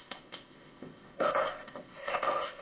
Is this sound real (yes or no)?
no